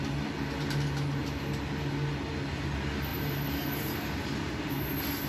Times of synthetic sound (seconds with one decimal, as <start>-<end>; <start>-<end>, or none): 3.1-4.7